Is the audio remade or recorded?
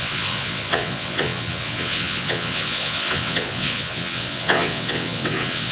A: remade